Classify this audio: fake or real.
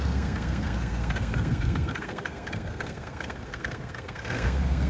fake